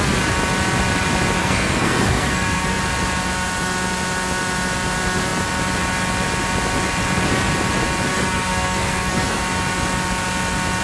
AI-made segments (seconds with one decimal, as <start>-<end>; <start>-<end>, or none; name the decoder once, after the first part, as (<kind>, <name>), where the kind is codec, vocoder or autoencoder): 1.4-2.8 (codec, SNAC); 8.1-9.4